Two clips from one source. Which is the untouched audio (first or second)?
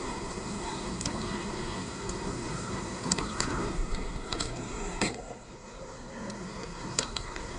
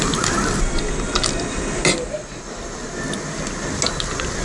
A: second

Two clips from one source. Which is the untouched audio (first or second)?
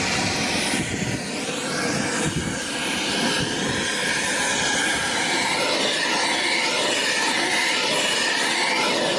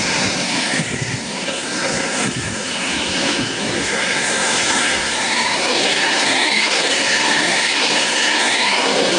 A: first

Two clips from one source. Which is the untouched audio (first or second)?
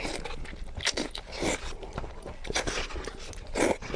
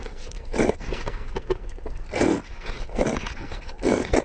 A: first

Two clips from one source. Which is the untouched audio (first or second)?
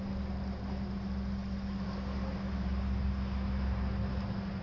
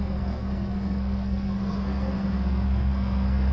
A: first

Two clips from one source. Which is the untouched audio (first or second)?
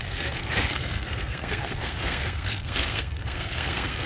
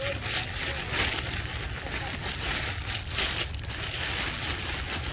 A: second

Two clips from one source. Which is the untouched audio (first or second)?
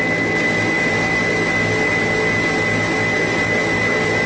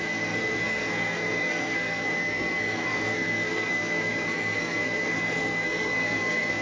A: first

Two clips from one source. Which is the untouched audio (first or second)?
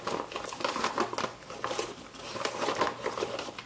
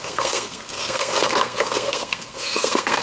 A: first